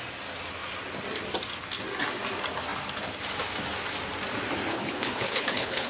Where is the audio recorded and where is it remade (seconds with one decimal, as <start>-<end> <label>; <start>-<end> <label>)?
0.0-4.7 recorded; 4.7-5.9 remade